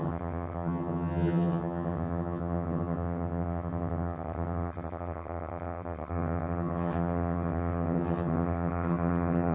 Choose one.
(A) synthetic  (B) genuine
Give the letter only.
A